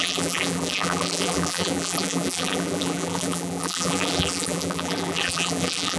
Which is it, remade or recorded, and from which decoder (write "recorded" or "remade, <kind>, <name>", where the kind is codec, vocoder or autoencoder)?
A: remade, vocoder, BigVGAN v2